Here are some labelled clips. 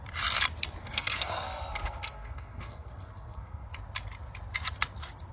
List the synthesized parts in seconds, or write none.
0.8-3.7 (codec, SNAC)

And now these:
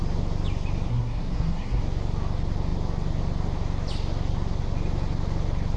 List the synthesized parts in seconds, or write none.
0.9-1.8 (codec, SNAC)

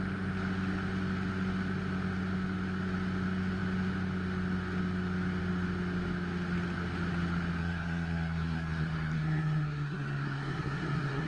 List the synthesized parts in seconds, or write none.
7.6-11.3 (codec, SNAC)